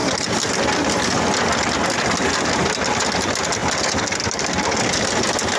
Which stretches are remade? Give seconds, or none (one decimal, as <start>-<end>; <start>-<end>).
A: none